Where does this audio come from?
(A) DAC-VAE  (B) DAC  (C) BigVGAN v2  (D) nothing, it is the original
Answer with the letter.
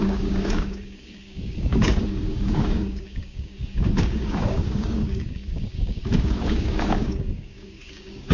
B